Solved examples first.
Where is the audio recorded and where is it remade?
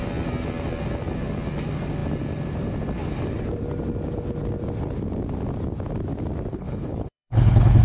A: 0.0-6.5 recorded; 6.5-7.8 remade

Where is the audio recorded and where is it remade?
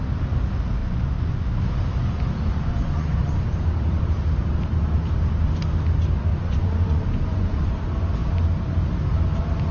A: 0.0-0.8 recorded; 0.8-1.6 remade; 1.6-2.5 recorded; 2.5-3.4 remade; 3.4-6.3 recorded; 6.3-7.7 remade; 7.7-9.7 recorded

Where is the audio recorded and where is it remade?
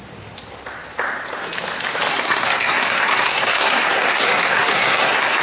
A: 0.0-2.1 recorded; 2.1-5.4 remade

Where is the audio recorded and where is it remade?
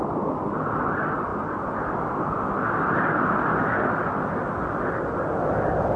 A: 0.0-6.0 recorded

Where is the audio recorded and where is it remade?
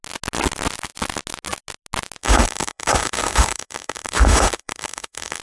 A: 0.0-2.2 recorded; 2.2-5.4 remade